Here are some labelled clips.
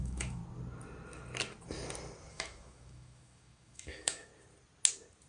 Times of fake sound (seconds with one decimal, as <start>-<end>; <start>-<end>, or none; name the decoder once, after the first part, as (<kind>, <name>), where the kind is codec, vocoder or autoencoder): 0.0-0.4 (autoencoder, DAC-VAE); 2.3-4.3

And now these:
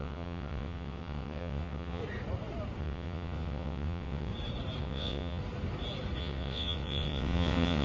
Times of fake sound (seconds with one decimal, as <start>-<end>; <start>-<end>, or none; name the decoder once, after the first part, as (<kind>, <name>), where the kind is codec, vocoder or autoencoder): 0.0-2.0 (vocoder, WaveNeXt); 2.8-4.3; 4.8-5.4; 6.2-7.8

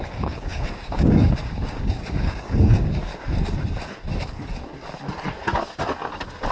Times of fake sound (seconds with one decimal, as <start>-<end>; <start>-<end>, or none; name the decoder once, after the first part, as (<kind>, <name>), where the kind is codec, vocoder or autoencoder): 0.0-3.1 (codec, DAC)